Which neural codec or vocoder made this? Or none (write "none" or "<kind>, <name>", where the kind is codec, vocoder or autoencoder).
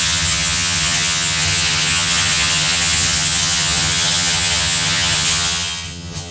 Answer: vocoder, HiFi-GAN